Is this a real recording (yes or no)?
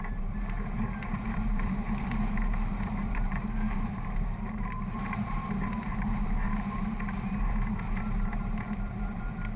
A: no